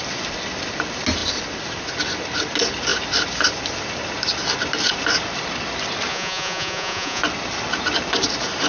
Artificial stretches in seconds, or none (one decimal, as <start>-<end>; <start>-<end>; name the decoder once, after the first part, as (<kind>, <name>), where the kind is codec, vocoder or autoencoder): 6.1-7.2 (vocoder, Vocos)